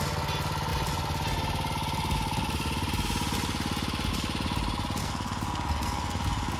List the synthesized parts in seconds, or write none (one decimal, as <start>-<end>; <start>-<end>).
5.0-6.6